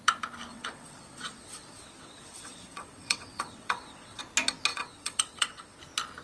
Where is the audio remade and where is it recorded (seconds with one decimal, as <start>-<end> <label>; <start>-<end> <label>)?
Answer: 0.0-0.5 recorded; 0.5-4.2 remade; 4.2-4.7 recorded; 4.7-5.8 remade; 5.8-6.2 recorded